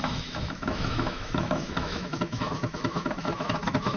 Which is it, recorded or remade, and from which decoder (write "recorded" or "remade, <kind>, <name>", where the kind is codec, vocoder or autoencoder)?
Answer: remade, autoencoder, DAC-VAE